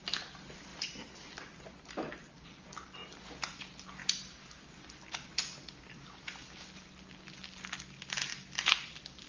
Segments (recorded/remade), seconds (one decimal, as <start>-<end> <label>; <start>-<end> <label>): 0.0-0.7 recorded; 0.7-1.7 remade; 1.7-3.0 recorded; 3.0-3.6 remade; 3.6-8.3 recorded; 8.3-8.9 remade; 8.9-9.3 recorded